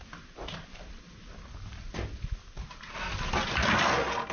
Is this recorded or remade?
recorded